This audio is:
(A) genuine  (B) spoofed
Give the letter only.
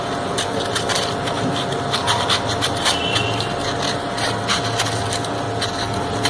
A